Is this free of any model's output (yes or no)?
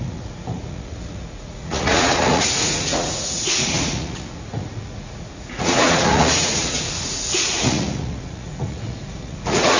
no